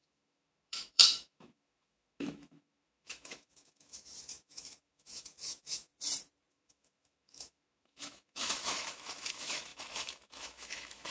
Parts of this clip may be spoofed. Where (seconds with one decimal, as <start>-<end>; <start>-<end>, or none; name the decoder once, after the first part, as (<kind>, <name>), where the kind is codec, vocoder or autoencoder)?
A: 0.0-5.9 (autoencoder, DAC-VAE); 6.5-11.1